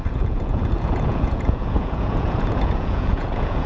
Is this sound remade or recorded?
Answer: remade